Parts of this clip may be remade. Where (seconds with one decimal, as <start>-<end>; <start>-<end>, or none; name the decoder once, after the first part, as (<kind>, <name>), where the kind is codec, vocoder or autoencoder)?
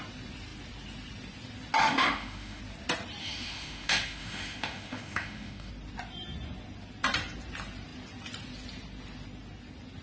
1.8-2.6 (autoencoder, DAC-VAE); 3.2-5.7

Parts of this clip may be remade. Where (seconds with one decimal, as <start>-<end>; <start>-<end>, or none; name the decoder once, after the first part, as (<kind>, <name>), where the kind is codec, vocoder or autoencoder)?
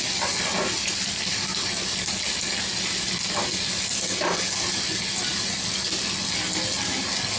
none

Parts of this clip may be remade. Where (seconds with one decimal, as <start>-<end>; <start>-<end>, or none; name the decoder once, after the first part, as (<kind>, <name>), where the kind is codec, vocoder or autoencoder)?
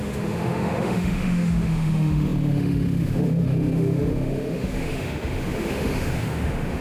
0.0-6.8 (autoencoder, DAC-VAE)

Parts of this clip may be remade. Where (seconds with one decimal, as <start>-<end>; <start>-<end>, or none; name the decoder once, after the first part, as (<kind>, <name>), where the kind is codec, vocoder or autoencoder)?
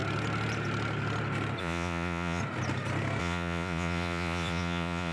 1.6-2.4 (vocoder, Vocos); 3.2-5.1